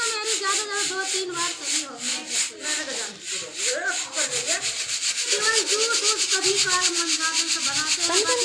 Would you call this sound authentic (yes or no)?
yes